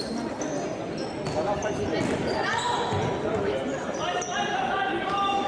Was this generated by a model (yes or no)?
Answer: yes